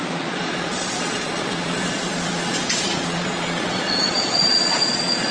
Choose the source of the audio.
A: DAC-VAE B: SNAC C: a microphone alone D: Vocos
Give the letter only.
D